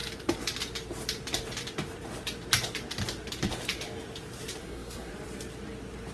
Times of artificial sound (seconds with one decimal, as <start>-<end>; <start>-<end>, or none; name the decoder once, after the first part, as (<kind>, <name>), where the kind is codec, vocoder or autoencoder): 4.6-5.1 (codec, SNAC)